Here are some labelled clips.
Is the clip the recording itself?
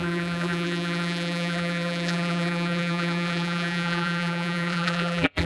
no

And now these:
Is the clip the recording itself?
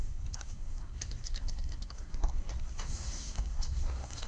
no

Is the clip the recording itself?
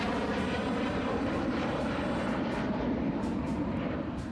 no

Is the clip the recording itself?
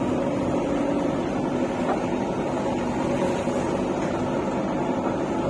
yes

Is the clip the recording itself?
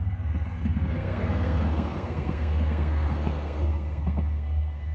no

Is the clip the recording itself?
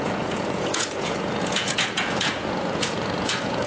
no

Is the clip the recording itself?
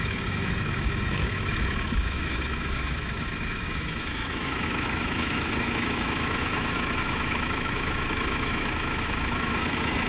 no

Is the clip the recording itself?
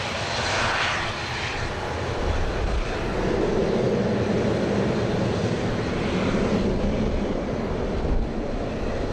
yes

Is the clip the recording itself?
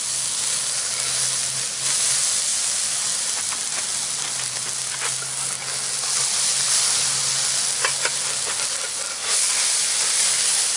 yes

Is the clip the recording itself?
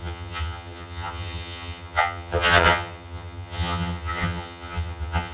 no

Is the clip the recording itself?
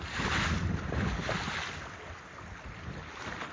yes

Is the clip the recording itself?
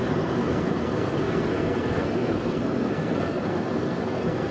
no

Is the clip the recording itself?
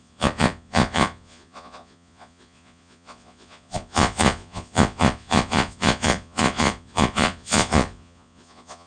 no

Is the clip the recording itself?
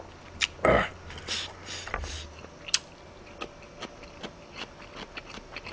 yes